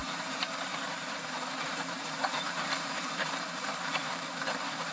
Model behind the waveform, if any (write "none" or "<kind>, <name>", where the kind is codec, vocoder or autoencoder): vocoder, BigVGAN v2